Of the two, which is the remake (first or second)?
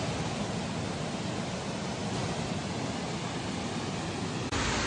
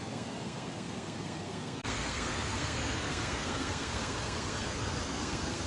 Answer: second